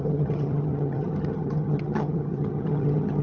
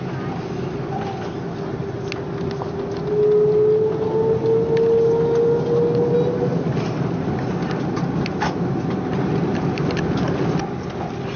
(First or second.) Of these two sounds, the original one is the second